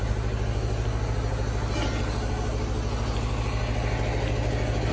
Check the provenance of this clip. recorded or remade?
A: recorded